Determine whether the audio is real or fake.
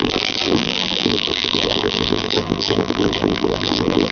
fake